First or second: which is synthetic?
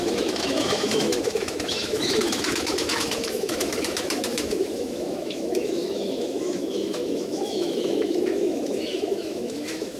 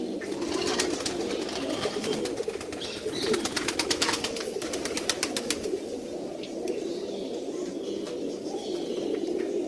first